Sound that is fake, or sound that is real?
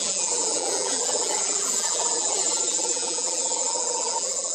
fake